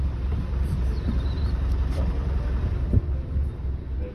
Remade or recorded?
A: remade